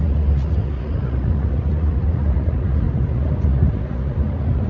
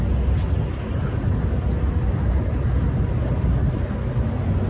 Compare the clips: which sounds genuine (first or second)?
second